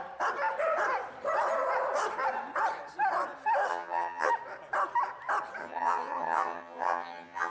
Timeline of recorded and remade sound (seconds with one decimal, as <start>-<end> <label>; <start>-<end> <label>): 0.0-3.7 recorded; 3.7-4.3 remade; 4.3-5.6 recorded; 5.6-7.5 remade